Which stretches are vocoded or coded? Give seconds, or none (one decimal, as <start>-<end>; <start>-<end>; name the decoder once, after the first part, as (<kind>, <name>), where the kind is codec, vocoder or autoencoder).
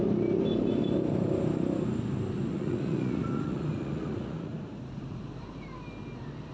2.5-5.2 (vocoder, Vocos)